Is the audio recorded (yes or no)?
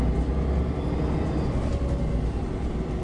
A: yes